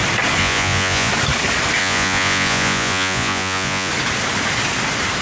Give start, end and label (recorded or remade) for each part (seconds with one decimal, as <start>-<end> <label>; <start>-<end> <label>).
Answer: 0.0-0.4 recorded; 0.4-1.1 remade; 1.1-1.8 recorded; 1.8-3.9 remade; 3.9-5.2 recorded